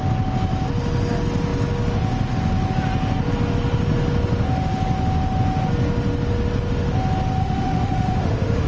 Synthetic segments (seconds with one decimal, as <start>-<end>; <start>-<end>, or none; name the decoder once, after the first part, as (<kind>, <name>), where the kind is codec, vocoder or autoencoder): 7.4-8.7 (autoencoder, DAC-VAE)